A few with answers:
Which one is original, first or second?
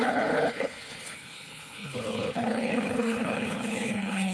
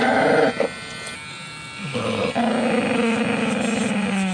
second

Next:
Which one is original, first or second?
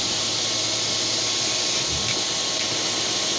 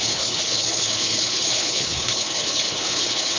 first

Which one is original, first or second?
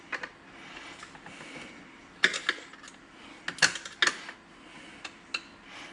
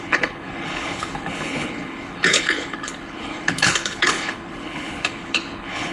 first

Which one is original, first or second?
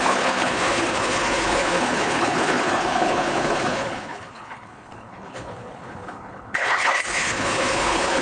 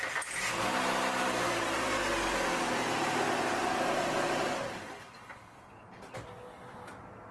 second